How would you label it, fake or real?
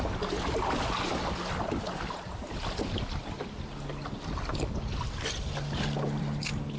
real